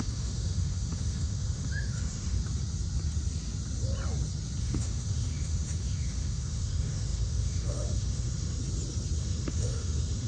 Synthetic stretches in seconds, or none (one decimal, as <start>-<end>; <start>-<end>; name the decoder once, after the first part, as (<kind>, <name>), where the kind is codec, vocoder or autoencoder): 0.0-2.4 (autoencoder, DAC-VAE); 4.6-8.6; 9.2-10.3